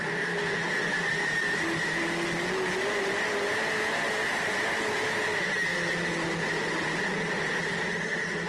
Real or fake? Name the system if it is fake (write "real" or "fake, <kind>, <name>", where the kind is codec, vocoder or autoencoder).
real